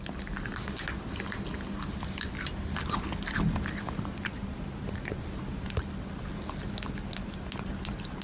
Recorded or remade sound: recorded